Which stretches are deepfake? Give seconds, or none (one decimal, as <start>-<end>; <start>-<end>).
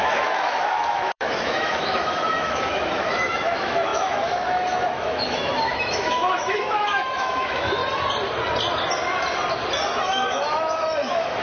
0.0-7.8; 10.0-11.4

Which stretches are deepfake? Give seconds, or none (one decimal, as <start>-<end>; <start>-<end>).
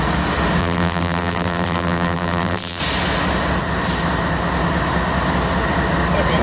0.6-2.8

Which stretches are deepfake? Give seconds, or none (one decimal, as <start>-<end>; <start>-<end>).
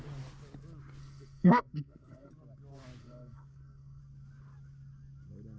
1.0-2.3; 3.0-4.0